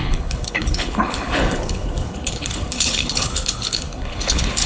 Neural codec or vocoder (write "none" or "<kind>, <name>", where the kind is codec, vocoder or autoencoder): codec, HILCodec